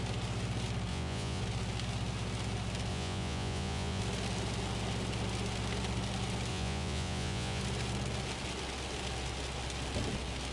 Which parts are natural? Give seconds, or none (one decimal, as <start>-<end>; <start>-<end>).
0.0-0.9; 1.4-2.9; 4.0-6.5; 7.6-10.5